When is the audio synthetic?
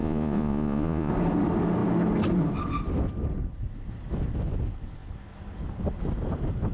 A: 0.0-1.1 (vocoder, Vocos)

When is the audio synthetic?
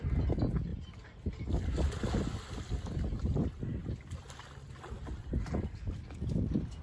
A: none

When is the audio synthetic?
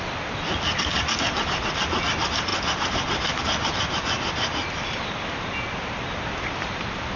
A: none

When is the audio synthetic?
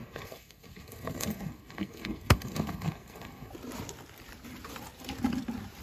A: 0.0-3.5 (codec, SNAC)